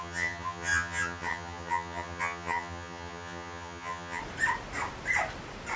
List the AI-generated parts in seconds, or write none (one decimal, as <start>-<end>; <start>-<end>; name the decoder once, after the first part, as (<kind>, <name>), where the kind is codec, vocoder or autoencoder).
0.0-4.2 (vocoder, HiFi-GAN)